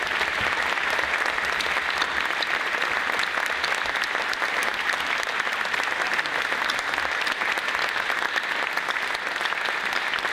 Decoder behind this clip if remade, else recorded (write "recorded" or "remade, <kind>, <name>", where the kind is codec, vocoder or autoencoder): recorded